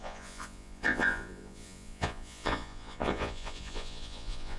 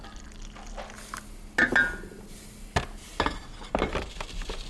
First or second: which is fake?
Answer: first